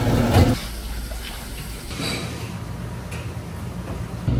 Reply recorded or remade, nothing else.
recorded